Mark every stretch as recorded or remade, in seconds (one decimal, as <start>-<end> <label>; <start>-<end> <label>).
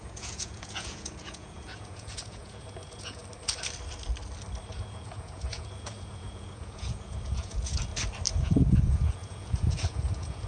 0.0-3.2 remade; 3.2-4.7 recorded; 4.7-7.9 remade; 7.9-8.4 recorded; 8.4-10.5 remade